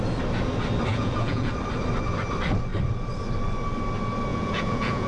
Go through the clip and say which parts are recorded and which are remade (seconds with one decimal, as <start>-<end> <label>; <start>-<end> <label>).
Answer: 0.0-0.9 recorded; 0.9-1.5 remade; 1.5-4.3 recorded; 4.3-5.1 remade